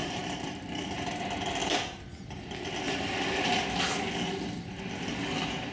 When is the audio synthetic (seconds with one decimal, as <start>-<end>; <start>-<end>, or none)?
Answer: 0.0-1.2; 1.6-2.1